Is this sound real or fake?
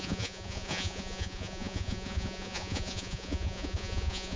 fake